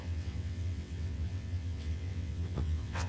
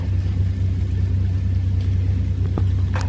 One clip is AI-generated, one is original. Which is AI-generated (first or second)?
first